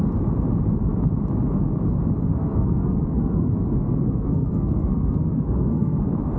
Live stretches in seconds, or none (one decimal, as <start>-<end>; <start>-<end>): 0.0-2.3; 6.0-6.4